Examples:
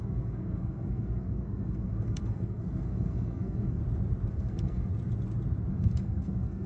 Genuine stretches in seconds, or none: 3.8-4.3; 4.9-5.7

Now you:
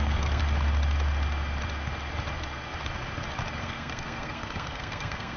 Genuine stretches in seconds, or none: 0.4-3.6

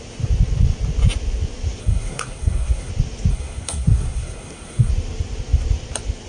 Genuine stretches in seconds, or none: 0.0-1.8; 2.9-3.3; 4.9-6.3

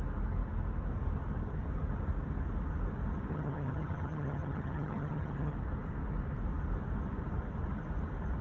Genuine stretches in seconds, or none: 0.0-3.3; 5.5-8.4

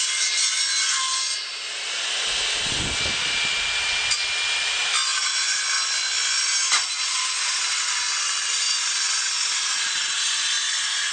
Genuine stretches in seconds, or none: 0.0-11.1

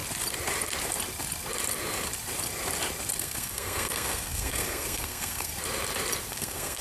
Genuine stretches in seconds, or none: 0.0-3.2; 5.5-6.3

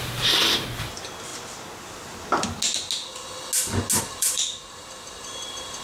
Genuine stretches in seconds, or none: 1.3-4.0